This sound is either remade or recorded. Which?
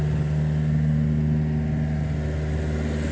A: recorded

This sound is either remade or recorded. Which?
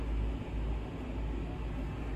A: recorded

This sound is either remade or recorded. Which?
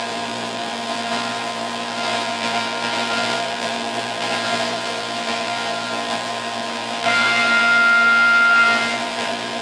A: remade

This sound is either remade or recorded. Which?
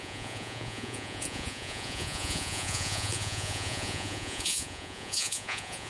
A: remade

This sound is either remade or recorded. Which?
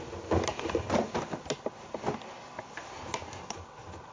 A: recorded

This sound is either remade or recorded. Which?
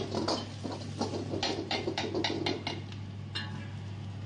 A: recorded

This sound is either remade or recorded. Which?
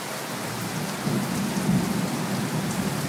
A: recorded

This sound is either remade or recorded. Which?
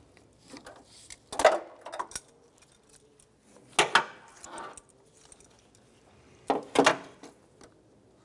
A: recorded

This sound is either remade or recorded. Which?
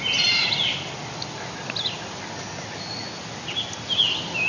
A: recorded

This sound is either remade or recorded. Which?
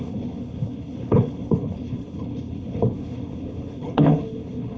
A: remade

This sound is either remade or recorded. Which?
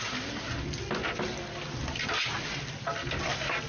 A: recorded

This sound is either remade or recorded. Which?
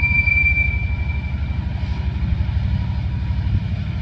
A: recorded